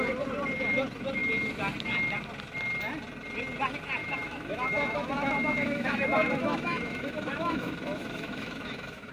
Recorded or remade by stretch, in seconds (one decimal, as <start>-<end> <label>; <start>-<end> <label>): 0.0-4.0 recorded; 4.0-9.1 remade